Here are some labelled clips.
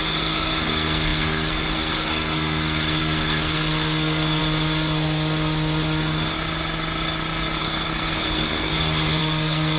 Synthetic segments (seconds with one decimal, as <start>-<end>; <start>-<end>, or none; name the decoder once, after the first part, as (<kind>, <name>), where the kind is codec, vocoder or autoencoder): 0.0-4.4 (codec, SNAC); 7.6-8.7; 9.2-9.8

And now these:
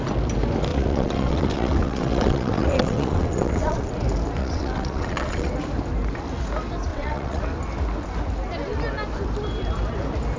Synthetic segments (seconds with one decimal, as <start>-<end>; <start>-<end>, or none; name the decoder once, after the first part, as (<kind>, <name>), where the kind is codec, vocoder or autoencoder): 0.7-3.9 (vocoder, WaveNeXt); 4.4-5.5; 6.9-7.4

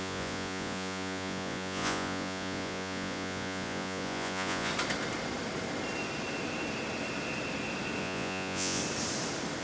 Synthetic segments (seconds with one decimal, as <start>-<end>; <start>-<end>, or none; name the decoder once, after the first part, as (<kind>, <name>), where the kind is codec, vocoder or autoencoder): 0.0-4.7 (vocoder, Vocos); 8.0-8.8

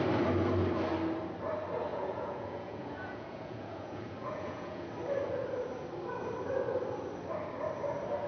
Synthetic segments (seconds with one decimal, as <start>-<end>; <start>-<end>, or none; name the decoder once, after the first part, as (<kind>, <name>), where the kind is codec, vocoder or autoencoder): 1.9-4.9 (vocoder, Vocos)

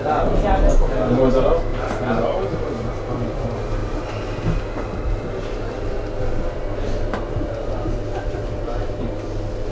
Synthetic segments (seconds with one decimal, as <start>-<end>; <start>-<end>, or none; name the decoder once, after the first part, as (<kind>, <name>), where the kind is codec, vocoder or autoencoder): 1.7-3.0 (vocoder, BigVGAN v2)

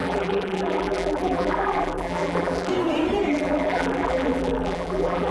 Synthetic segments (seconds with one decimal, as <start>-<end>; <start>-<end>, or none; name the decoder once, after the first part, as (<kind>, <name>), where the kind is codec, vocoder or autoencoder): 0.0-2.7 (vocoder, BigVGAN v2); 3.3-5.3